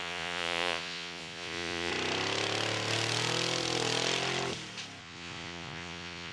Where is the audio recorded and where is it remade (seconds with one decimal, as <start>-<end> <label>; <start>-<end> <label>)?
0.0-1.9 remade; 1.9-5.0 recorded; 5.0-6.3 remade